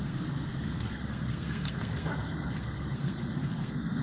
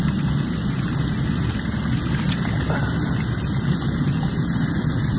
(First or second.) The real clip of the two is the second